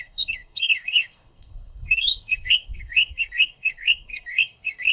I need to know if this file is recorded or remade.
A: remade